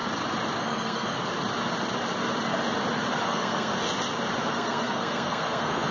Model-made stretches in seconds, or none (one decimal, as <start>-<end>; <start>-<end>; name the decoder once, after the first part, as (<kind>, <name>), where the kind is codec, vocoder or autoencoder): 0.6-1.2 (codec, SNAC); 3.2-3.7; 4.5-5.9